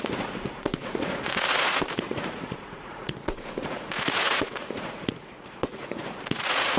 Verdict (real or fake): fake